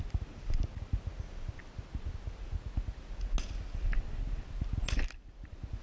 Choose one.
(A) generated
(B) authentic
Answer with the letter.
B